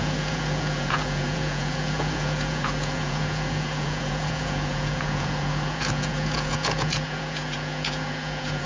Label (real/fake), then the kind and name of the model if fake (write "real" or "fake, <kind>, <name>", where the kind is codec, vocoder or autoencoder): fake, vocoder, Vocos